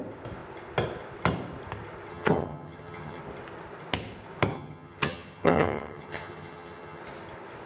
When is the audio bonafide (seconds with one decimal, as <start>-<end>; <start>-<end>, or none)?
0.0-2.1; 3.2-4.5; 7.0-7.7